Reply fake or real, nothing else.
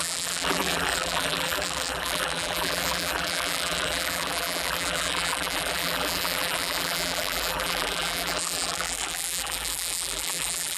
fake